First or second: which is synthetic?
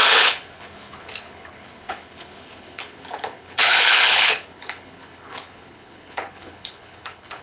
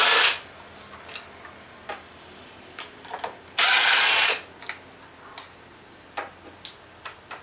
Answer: first